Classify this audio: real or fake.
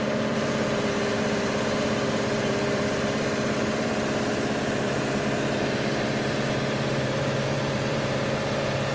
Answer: fake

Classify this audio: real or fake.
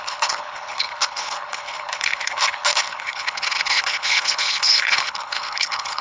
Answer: fake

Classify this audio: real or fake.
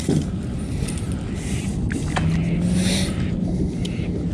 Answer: real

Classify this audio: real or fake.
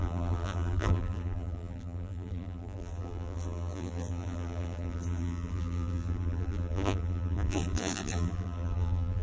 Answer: fake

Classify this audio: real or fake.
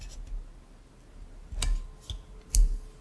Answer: real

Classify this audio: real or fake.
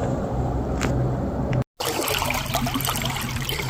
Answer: real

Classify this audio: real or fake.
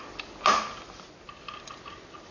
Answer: real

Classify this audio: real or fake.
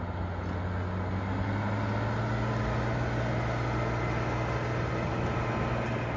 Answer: real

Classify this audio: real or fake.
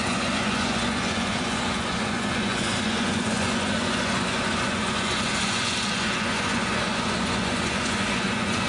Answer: fake